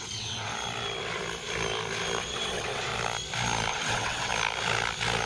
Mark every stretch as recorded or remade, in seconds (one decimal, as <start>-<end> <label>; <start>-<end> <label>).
0.0-0.5 remade; 0.5-2.2 recorded; 2.2-2.9 remade; 2.9-3.7 recorded; 3.7-4.3 remade; 4.3-5.3 recorded